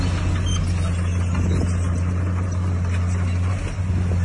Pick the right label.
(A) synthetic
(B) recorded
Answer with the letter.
B